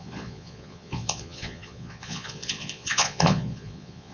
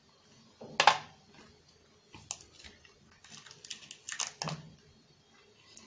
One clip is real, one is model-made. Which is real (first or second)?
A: second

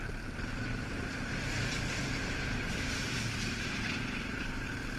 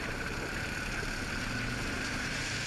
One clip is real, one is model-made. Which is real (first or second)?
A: second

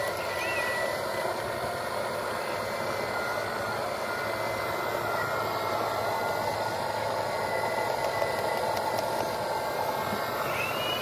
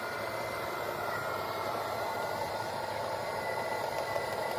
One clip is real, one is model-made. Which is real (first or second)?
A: first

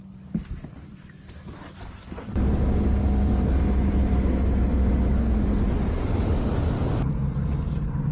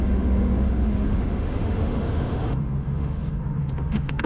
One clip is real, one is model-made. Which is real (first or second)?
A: first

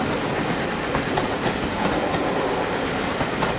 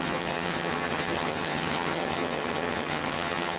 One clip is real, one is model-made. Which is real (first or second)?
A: first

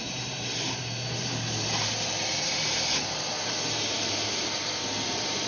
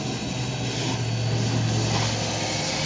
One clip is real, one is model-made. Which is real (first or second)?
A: second